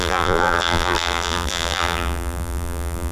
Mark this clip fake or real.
fake